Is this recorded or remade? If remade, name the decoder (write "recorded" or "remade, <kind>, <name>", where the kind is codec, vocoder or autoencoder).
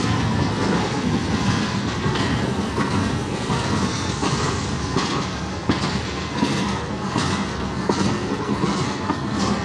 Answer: remade, codec, SNAC